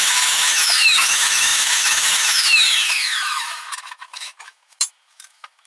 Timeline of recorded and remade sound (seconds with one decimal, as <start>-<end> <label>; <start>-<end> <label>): 0.0-5.7 remade